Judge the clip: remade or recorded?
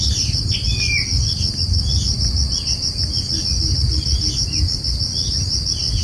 recorded